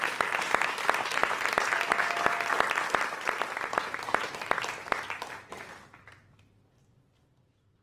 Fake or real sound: real